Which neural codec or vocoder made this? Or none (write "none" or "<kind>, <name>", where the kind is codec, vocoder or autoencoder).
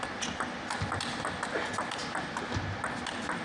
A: none